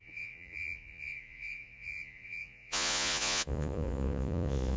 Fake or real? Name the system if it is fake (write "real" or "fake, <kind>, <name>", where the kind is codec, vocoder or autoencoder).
fake, vocoder, Vocos